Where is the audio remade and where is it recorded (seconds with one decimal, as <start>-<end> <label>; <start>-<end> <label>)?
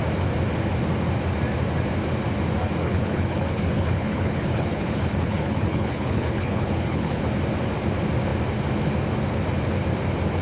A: 0.0-2.8 recorded; 2.8-7.2 remade; 7.2-10.4 recorded